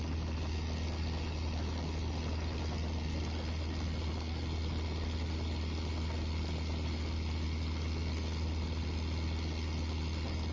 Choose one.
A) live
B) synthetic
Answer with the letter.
A